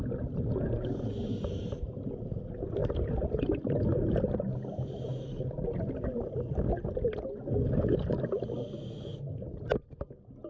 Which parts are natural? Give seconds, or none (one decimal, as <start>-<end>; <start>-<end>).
0.0-10.5